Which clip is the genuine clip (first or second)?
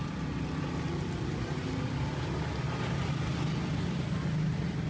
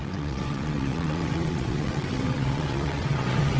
first